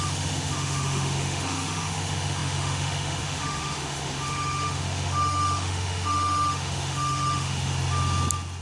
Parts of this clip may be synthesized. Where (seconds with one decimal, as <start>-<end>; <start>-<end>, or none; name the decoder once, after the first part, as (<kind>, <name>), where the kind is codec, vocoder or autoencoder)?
0.0-7.7 (autoencoder, DAC-VAE)